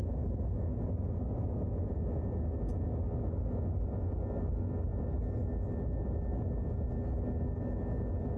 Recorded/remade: recorded